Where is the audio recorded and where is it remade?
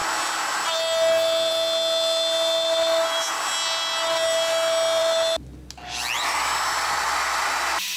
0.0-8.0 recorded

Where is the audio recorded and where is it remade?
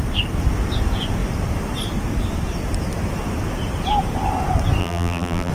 0.0-4.8 recorded; 4.8-5.5 remade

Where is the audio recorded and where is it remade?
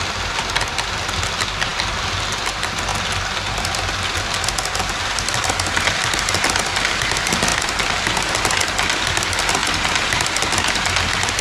0.0-1.7 recorded; 1.7-2.4 remade; 2.4-7.5 recorded; 7.5-8.3 remade; 8.3-9.6 recorded; 9.6-10.2 remade; 10.2-11.4 recorded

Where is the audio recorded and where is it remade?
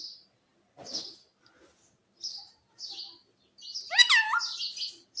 0.0-5.2 recorded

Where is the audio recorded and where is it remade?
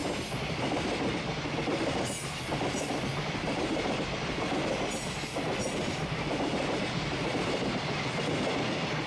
0.0-3.1 recorded; 3.1-7.6 remade; 7.6-9.1 recorded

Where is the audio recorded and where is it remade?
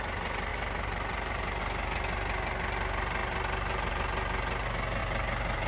0.0-0.5 recorded; 0.5-1.6 remade; 1.6-5.0 recorded; 5.0-5.7 remade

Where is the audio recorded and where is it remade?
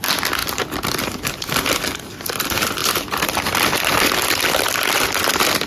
0.0-5.7 recorded